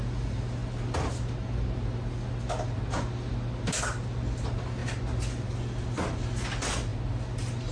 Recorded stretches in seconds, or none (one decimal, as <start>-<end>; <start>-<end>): 0.0-7.7